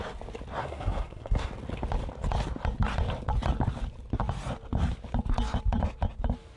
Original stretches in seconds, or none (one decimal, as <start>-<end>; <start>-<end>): 0.0-0.6; 1.5-6.6